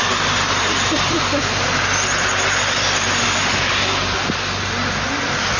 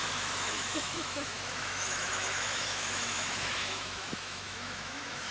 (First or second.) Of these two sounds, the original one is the first